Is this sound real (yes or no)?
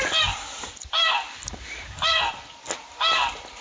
no